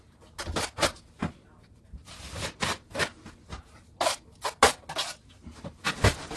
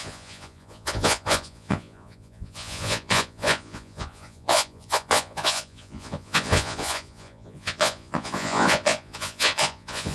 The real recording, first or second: first